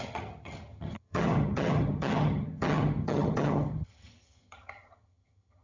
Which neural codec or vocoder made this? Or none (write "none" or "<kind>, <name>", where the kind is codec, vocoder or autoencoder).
vocoder, HiFi-GAN